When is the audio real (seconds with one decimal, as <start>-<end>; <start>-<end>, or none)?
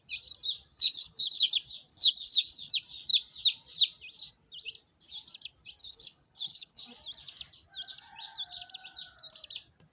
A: 0.0-0.7; 1.5-1.9; 2.7-5.8; 6.8-9.9